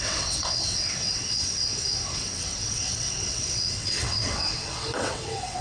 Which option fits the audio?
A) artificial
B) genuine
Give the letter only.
A